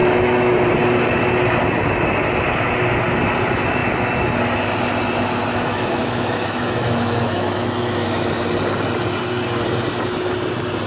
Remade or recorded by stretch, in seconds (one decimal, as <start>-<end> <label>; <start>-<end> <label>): 0.0-0.6 remade; 0.6-5.5 recorded; 5.5-8.4 remade; 8.4-10.9 recorded